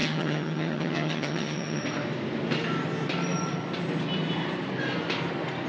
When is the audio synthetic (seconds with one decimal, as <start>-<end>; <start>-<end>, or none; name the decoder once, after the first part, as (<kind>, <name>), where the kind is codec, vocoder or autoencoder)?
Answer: 0.0-1.8 (vocoder, HiFi-GAN)